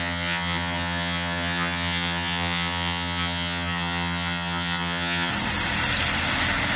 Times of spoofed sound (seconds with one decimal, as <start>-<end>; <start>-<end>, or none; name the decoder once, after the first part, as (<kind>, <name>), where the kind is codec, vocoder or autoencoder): 0.0-5.3 (vocoder, HiFi-GAN)